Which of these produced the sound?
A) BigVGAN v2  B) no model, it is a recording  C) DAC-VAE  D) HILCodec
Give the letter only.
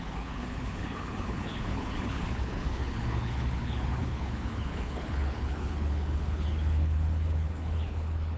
D